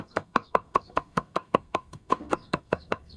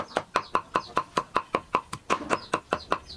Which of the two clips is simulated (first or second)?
first